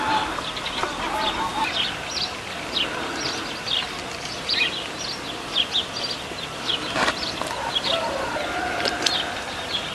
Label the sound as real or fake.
real